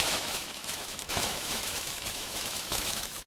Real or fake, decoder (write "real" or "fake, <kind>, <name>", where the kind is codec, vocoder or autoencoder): fake, autoencoder, DAC-VAE